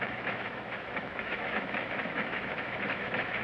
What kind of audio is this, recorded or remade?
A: remade